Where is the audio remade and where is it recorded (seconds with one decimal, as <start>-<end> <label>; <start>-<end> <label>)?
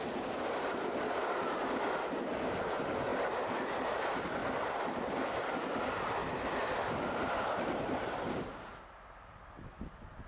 0.0-10.3 recorded